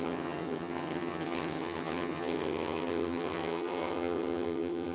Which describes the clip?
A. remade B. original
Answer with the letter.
A